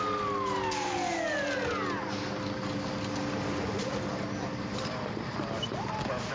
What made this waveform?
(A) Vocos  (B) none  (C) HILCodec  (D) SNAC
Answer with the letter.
B